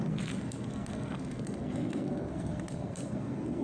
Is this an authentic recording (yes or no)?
no